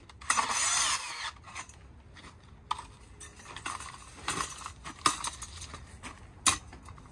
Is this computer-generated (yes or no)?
no